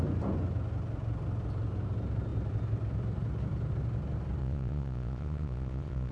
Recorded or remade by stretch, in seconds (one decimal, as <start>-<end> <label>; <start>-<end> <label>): 0.0-4.4 recorded; 4.4-6.1 remade